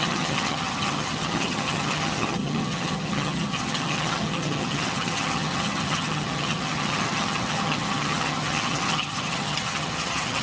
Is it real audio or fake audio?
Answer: fake